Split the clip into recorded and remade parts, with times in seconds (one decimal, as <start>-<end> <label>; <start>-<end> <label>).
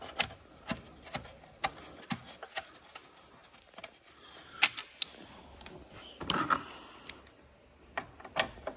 0.0-8.8 recorded